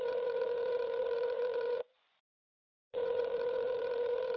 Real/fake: fake